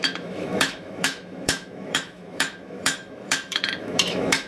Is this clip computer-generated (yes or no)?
yes